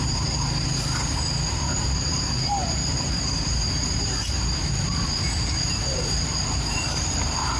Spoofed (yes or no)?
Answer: yes